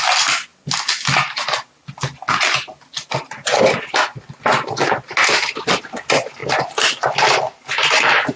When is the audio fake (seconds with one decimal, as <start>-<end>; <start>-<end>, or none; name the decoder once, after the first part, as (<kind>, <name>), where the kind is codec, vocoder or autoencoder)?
none